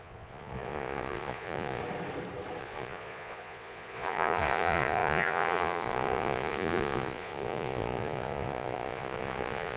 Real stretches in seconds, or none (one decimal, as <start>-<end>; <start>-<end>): 1.8-2.6